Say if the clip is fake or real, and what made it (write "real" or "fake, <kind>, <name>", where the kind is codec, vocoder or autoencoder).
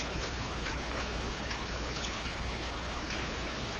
fake, codec, HILCodec